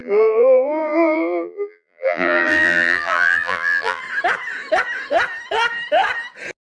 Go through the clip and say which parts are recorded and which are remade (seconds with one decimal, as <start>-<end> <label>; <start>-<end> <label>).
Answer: 0.0-4.0 remade; 4.0-6.7 recorded